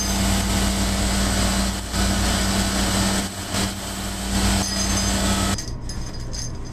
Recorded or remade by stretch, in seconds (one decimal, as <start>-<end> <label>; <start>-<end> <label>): 0.0-6.7 recorded